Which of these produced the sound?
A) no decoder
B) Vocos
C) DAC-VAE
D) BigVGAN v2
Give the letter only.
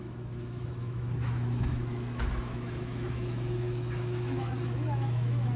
C